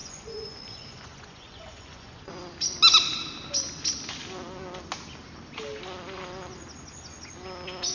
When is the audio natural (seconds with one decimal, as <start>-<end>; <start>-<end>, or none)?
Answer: 2.3-7.9